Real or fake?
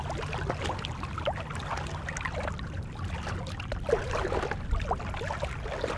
real